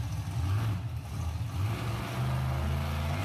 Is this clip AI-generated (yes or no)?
no